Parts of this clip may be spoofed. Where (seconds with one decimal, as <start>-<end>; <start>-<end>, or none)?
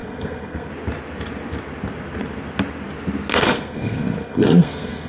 0.0-0.7; 3.3-5.1